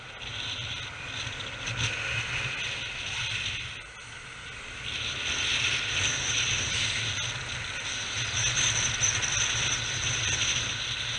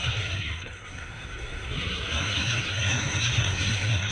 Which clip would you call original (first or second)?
first